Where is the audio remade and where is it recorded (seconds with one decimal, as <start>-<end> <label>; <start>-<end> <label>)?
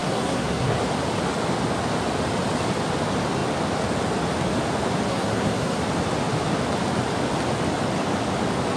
0.0-0.8 remade; 0.8-5.1 recorded; 5.1-5.8 remade; 5.8-8.8 recorded